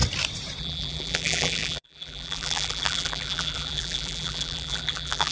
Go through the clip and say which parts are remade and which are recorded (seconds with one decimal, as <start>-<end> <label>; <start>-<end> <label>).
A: 0.0-0.6 recorded; 0.6-5.3 remade